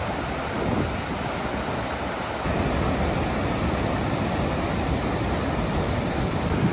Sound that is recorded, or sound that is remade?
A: remade